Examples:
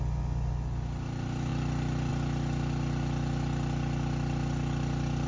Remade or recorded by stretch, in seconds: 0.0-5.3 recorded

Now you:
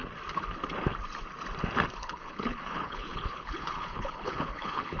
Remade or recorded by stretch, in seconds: 0.0-2.0 recorded; 2.0-5.0 remade

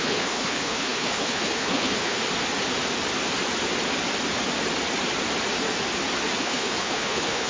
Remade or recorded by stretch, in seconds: 0.0-2.2 remade; 2.2-6.4 recorded; 6.4-7.5 remade

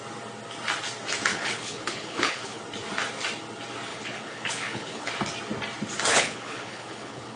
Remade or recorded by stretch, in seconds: 0.0-1.3 recorded; 1.3-2.6 remade; 2.6-3.9 recorded; 3.9-5.1 remade; 5.1-6.1 recorded; 6.1-7.4 remade

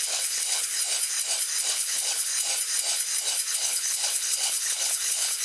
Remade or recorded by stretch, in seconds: 0.0-0.8 remade; 0.8-1.7 recorded; 1.7-2.3 remade; 2.3-3.5 recorded; 3.5-5.4 remade

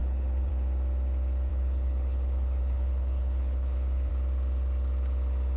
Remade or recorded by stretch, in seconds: 0.0-0.5 remade; 0.5-1.5 recorded; 1.5-4.1 remade; 4.1-5.6 recorded

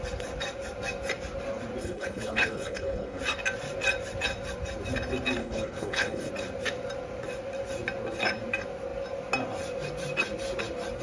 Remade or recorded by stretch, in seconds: 0.0-1.8 recorded; 1.8-3.2 remade; 3.2-5.4 recorded; 5.4-6.3 remade; 6.3-11.0 recorded

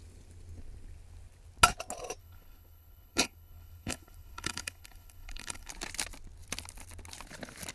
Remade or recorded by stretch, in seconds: 0.0-2.2 recorded; 2.2-5.7 remade; 5.7-7.7 recorded